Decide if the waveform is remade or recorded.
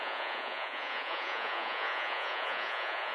remade